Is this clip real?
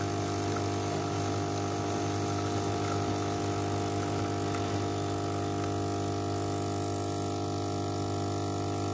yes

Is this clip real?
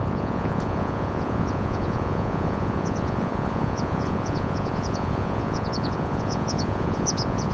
no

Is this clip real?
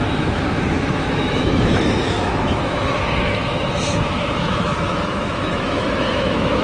no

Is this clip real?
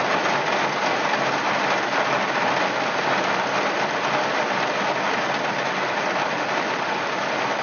yes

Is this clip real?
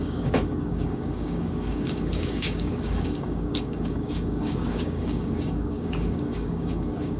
no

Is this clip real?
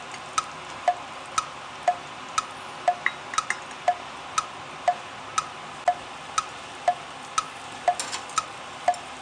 yes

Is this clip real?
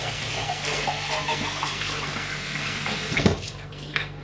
no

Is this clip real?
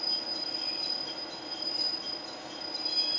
yes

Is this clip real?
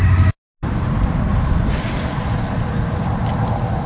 yes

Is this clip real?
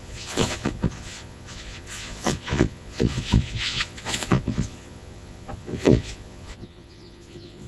no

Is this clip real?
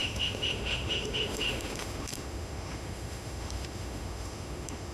no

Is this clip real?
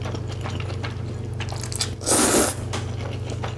yes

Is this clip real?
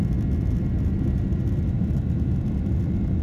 yes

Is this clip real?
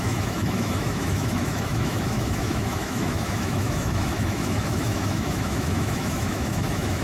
no